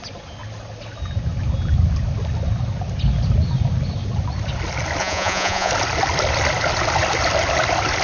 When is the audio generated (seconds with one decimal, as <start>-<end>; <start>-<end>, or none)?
5.0-5.7